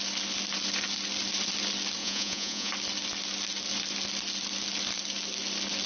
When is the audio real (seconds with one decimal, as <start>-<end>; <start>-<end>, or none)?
0.0-2.0; 2.7-5.9